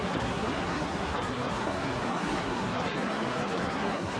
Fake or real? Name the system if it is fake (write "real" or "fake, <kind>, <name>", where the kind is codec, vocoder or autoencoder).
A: fake, codec, SNAC